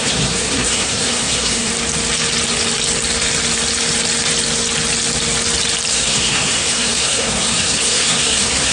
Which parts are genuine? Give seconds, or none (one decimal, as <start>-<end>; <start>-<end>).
1.7-5.9